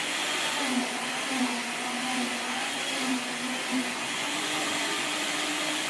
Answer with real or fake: fake